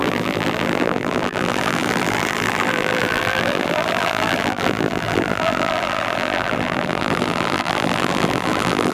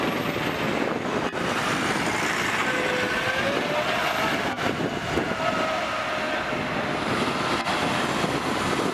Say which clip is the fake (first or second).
first